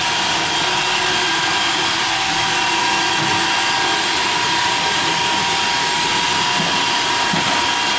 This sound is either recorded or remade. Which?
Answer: recorded